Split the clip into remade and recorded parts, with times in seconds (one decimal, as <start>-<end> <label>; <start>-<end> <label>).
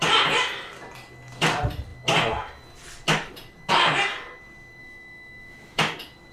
0.0-4.8 recorded; 4.8-5.8 remade; 5.8-6.3 recorded